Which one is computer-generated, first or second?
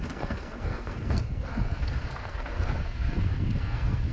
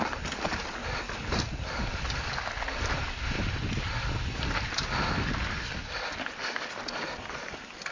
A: first